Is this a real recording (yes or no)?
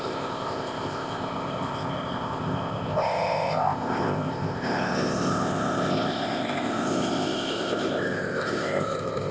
no